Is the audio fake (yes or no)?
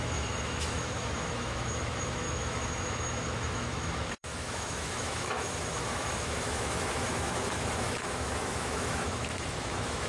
yes